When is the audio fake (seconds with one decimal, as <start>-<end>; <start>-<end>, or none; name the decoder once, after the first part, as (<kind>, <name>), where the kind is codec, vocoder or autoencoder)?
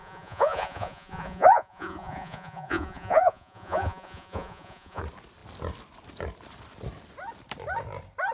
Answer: 0.0-5.0 (vocoder, Vocos)